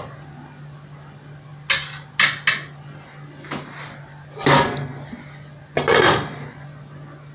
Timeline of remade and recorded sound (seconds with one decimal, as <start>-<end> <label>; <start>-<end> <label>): 0.0-7.3 recorded